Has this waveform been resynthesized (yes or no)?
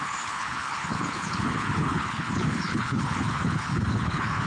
yes